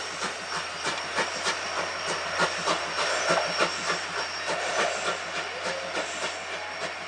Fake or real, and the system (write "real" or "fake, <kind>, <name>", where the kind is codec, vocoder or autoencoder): real